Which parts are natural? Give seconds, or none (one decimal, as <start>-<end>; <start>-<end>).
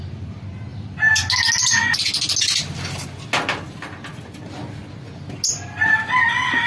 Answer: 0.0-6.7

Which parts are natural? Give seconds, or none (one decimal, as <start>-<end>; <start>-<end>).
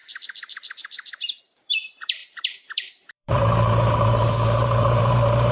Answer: none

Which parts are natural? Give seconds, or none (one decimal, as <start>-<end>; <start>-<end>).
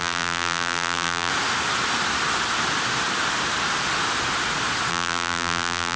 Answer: 1.3-4.9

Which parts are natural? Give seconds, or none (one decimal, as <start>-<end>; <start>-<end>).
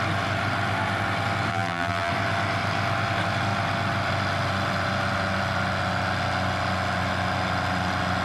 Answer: 0.0-1.5; 2.1-8.2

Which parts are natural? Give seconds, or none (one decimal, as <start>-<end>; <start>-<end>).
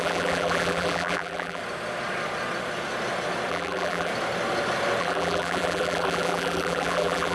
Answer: 1.6-3.5; 4.1-5.0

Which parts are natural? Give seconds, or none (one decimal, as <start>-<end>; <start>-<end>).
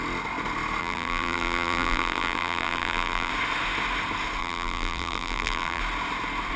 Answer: 0.0-0.8; 3.3-4.4; 5.8-6.6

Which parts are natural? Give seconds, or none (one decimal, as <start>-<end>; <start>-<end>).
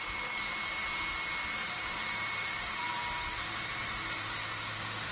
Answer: 0.0-1.6; 2.9-3.3; 4.4-5.1